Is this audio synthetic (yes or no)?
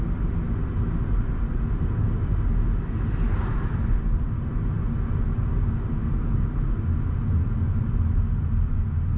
no